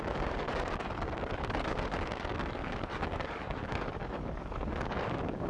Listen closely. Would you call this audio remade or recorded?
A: remade